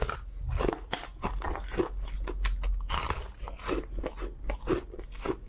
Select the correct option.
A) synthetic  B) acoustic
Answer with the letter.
B